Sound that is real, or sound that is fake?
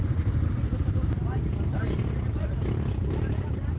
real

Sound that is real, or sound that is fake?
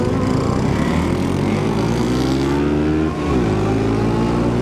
real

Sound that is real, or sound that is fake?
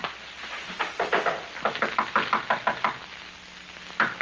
real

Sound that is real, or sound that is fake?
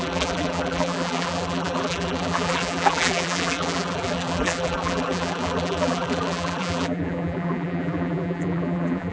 fake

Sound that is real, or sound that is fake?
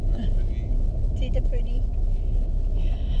real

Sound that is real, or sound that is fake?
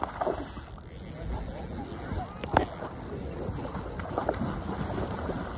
real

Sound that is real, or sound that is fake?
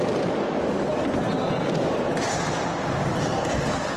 real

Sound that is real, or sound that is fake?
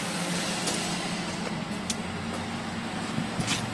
real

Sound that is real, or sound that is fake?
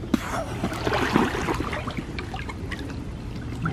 real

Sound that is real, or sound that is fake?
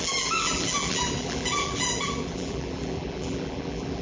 fake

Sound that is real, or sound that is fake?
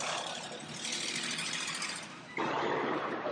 fake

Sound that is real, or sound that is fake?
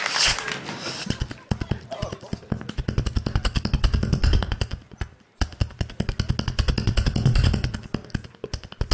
real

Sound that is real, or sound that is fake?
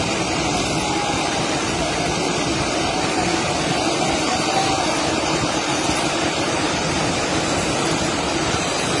real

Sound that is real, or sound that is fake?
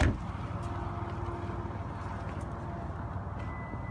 real